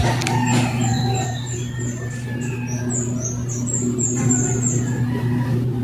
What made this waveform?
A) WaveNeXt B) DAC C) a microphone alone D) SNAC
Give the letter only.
C